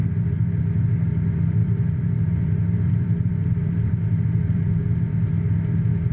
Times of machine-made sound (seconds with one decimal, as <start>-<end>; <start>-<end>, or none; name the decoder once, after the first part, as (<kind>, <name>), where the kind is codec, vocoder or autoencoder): 0.0-0.6 (vocoder, BigVGAN v2); 1.6-5.3